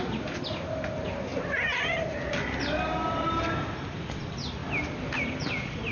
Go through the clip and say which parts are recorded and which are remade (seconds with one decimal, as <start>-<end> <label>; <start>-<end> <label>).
0.0-5.9 recorded